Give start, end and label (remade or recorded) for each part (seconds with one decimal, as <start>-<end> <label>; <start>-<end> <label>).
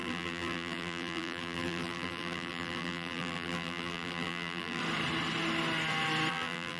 0.0-4.8 remade; 4.8-6.3 recorded; 6.3-6.8 remade